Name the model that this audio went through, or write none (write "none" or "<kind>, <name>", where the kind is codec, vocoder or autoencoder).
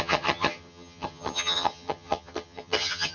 vocoder, HiFi-GAN